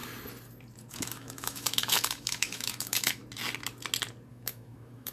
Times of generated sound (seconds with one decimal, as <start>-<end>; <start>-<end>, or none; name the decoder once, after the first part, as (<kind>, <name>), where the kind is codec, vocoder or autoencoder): 0.9-3.2 (autoencoder, DAC-VAE); 4.3-5.1